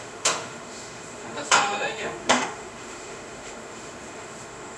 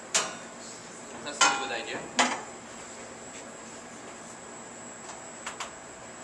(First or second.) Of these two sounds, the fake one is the first